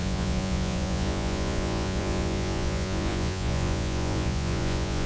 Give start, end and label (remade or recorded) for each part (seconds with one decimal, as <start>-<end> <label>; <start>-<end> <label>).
0.0-5.1 remade